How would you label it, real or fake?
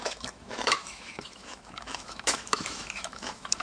fake